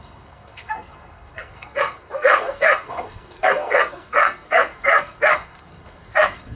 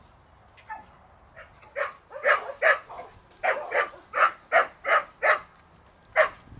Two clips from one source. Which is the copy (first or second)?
first